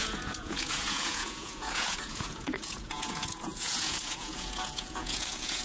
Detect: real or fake fake